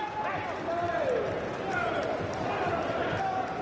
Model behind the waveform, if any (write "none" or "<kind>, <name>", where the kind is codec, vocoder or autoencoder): none